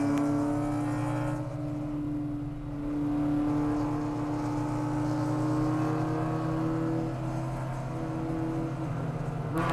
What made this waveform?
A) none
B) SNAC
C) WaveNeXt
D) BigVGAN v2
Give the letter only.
A